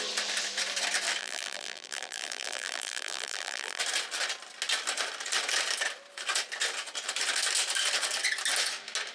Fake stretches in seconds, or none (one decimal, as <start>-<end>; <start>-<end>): 1.2-3.8